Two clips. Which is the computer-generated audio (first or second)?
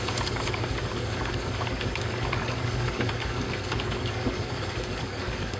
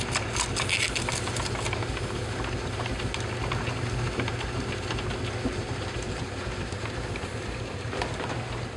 first